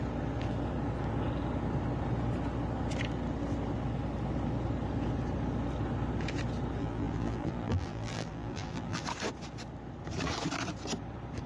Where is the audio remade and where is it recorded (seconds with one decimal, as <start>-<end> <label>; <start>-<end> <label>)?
0.0-6.8 recorded; 6.8-9.0 remade; 9.0-11.5 recorded